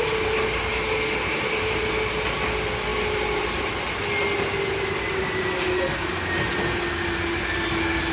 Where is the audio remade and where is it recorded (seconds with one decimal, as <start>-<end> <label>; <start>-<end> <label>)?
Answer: 0.0-2.9 recorded; 2.9-3.6 remade; 3.6-8.1 recorded